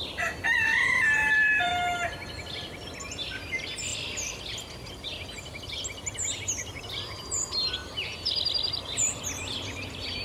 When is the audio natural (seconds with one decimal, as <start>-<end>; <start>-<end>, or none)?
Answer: 0.0-0.7; 1.7-3.9; 4.4-7.8; 9.2-10.2